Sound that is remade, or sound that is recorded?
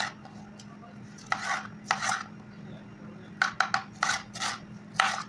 recorded